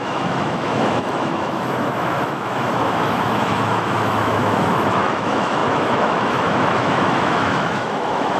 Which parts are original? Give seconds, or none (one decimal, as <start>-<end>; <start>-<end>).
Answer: none